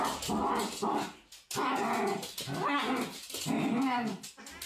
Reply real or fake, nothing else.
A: real